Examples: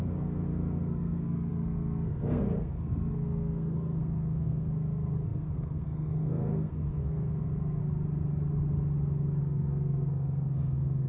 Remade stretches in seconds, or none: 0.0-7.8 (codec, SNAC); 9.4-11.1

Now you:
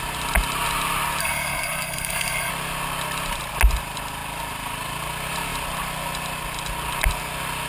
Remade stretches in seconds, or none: 1.2-2.5 (codec, SNAC)

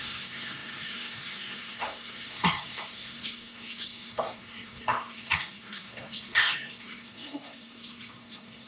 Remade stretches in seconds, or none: 0.0-8.7 (codec, SNAC)